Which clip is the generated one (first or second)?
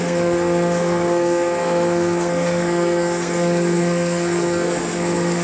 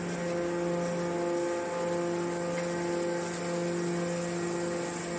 first